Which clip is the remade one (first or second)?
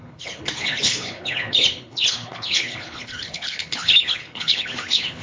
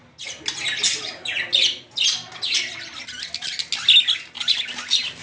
first